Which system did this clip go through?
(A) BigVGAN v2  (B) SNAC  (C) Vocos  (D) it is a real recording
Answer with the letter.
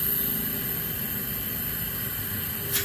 D